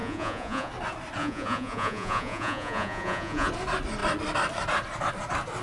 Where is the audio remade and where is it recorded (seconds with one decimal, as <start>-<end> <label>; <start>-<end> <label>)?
0.0-0.7 remade; 0.7-1.2 recorded; 1.2-3.5 remade; 3.5-5.6 recorded